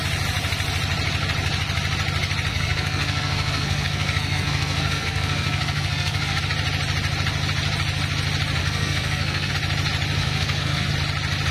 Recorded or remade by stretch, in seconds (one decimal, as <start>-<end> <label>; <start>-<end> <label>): 0.0-2.5 recorded; 2.5-6.4 remade; 6.4-8.6 recorded; 8.6-9.5 remade; 9.5-10.2 recorded; 10.2-10.9 remade; 10.9-11.5 recorded